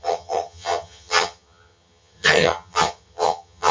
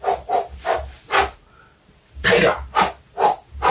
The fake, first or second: first